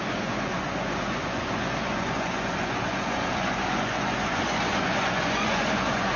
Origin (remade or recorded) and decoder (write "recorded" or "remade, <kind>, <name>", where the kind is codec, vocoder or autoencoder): remade, vocoder, Vocos